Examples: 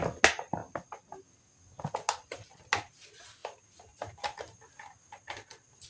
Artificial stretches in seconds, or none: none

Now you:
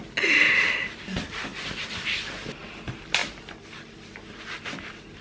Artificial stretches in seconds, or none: 1.5-2.5 (vocoder, BigVGAN v2); 3.2-5.2

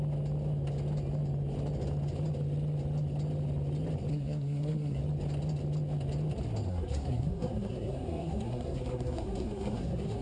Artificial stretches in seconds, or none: 4.1-5.0 (codec, SNAC); 6.7-10.2

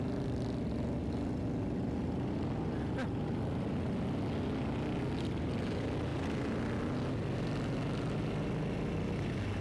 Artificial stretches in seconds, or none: none

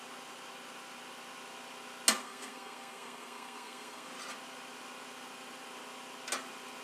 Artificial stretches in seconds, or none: 2.2-4.1 (codec, SNAC)

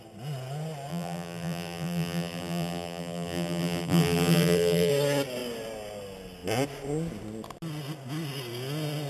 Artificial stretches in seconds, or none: 0.9-4.9 (vocoder, BigVGAN v2)

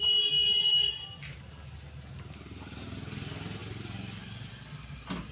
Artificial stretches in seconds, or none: none